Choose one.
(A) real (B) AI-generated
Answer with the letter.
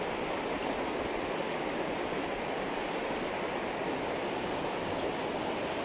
A